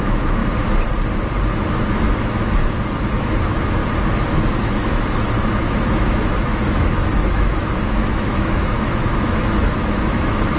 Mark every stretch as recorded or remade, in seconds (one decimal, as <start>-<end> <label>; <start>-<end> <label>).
0.0-0.4 remade; 0.4-1.7 recorded; 1.7-3.8 remade; 3.8-4.6 recorded; 4.6-10.6 remade